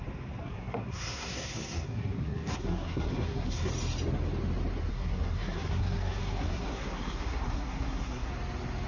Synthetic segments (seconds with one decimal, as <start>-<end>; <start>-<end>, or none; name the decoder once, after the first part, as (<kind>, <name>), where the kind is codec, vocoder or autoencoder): 0.4-3.7 (codec, SNAC); 4.9-8.3